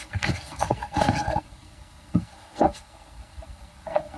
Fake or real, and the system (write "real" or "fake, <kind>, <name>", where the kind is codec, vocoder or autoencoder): fake, codec, SNAC